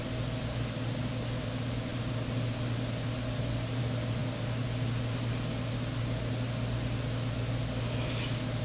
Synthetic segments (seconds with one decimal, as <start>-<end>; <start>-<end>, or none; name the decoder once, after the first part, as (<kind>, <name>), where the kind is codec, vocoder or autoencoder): none